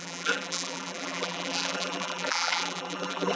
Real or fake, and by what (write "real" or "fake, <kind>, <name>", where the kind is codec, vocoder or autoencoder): fake, vocoder, BigVGAN v2